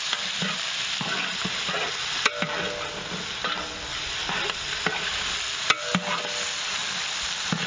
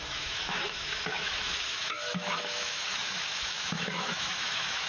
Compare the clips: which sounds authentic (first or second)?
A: first